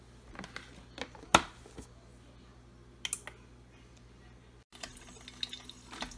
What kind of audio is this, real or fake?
real